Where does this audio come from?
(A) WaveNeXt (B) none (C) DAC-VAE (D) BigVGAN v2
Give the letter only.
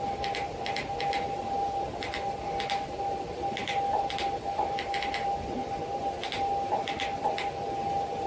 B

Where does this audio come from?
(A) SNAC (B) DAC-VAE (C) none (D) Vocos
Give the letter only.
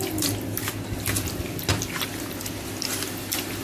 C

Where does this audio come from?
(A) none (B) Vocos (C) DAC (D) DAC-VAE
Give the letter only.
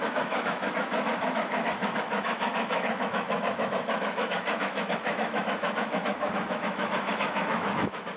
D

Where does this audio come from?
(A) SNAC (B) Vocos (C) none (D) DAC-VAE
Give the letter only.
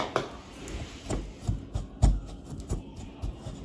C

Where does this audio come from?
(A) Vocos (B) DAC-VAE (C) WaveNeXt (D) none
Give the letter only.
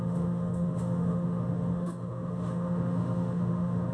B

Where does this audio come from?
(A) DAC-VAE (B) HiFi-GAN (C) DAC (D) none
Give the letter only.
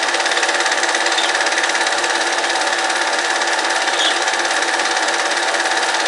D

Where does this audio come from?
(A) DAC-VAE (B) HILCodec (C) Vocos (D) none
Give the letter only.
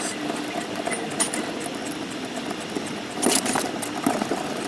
D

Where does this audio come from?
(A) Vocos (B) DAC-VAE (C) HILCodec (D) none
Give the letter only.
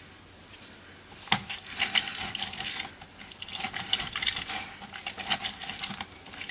D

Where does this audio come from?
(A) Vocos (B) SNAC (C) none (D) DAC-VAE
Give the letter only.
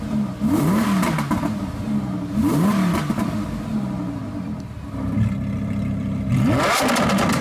C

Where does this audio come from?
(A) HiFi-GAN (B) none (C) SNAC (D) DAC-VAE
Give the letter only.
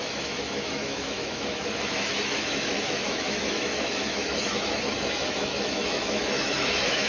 D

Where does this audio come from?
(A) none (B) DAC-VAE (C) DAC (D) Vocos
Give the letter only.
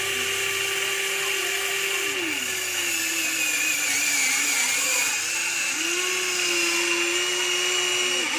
A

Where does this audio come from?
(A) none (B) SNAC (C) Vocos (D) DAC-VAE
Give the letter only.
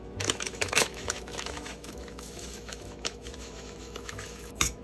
D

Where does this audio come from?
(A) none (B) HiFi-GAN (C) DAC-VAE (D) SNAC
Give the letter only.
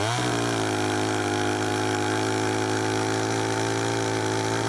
A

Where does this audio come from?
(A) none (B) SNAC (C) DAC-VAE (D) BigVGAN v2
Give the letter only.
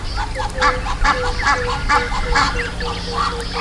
A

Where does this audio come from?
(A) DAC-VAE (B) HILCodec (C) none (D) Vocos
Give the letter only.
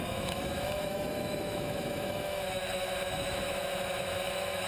A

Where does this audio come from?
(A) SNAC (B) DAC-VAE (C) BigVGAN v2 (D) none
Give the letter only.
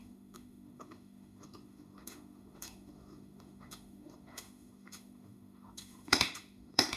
B